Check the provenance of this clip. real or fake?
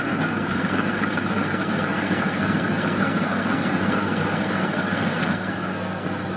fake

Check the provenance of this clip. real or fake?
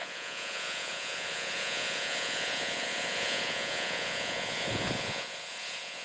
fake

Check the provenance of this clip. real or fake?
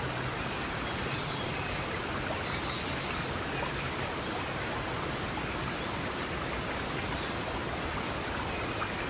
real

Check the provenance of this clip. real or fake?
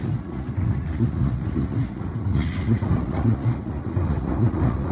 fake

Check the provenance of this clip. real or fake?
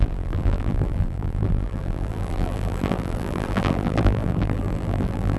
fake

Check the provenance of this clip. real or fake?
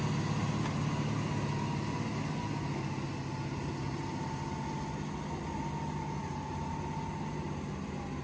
real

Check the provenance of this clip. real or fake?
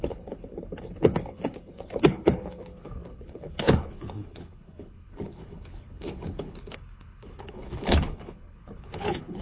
fake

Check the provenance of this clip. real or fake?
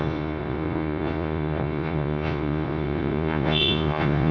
fake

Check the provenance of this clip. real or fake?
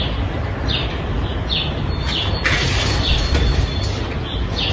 real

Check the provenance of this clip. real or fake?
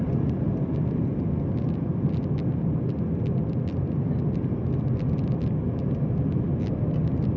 real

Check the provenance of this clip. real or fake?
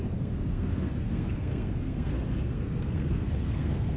fake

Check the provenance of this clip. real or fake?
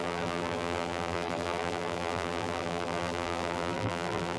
fake